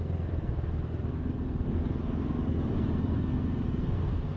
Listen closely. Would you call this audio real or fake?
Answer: fake